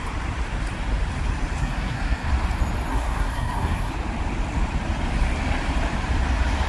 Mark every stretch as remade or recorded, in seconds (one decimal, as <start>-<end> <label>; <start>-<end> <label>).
0.0-1.6 recorded; 1.6-2.3 remade; 2.3-2.9 recorded; 2.9-3.9 remade; 3.9-6.7 recorded